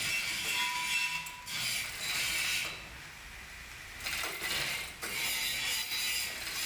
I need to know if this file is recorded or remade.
recorded